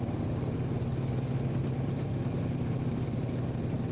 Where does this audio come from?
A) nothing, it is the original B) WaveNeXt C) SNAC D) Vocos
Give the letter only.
A